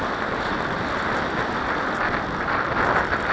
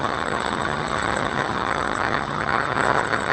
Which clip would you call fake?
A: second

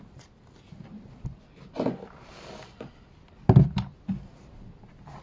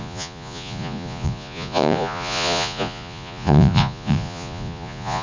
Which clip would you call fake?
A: second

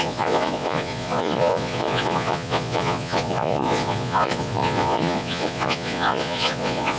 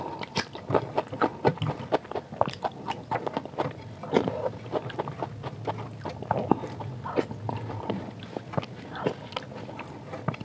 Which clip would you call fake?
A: first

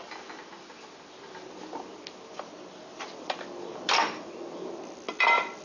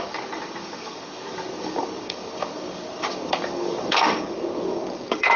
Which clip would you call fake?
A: second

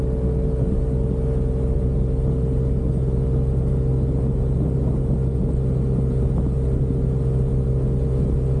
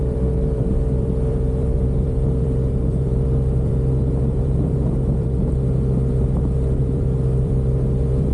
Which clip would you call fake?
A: second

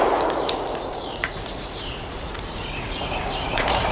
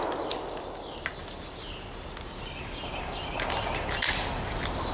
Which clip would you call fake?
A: first